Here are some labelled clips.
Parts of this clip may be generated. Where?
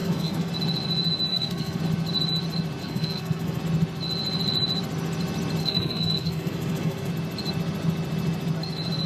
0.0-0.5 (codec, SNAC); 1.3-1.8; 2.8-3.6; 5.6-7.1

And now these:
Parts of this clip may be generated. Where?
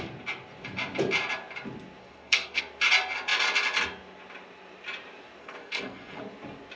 2.0-2.6 (codec, SNAC); 5.4-6.2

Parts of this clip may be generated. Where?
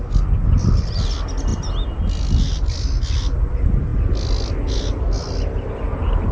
none